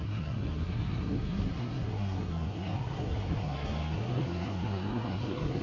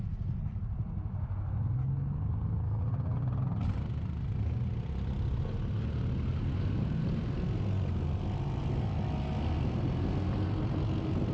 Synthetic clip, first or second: first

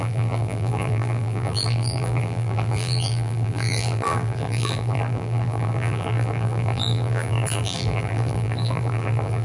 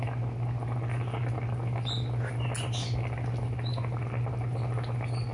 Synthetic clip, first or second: first